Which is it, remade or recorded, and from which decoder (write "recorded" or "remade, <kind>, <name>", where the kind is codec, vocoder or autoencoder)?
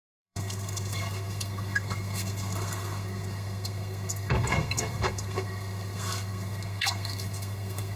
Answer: remade, codec, SNAC